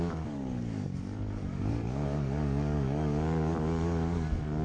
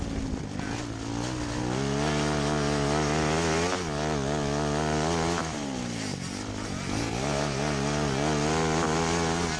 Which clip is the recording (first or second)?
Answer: second